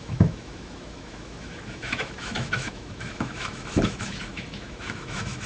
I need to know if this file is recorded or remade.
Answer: remade